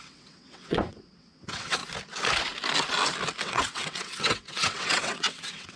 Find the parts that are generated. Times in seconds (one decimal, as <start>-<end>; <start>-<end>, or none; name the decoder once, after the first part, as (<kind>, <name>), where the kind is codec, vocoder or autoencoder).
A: 0.0-1.8 (vocoder, WaveNeXt); 3.4-5.8